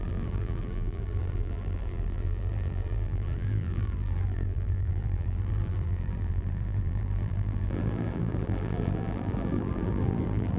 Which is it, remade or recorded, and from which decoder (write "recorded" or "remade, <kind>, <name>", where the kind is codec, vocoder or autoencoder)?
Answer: remade, vocoder, BigVGAN v2